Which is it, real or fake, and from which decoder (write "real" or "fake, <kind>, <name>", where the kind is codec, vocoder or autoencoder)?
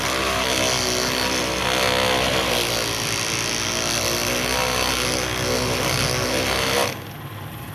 real